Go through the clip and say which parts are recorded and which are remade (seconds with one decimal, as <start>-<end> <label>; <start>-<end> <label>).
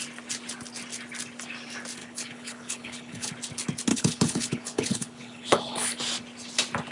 0.0-2.0 recorded; 2.0-3.3 remade; 3.3-3.9 recorded; 3.9-5.9 remade; 5.9-6.9 recorded